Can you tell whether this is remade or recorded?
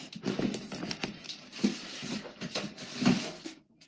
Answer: recorded